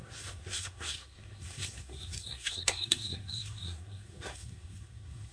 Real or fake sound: fake